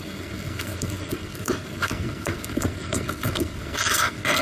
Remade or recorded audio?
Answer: remade